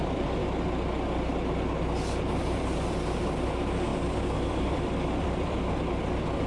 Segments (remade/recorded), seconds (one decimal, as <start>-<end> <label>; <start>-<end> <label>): 0.0-0.4 remade; 0.4-2.4 recorded; 2.4-3.9 remade; 3.9-4.6 recorded; 4.6-6.5 remade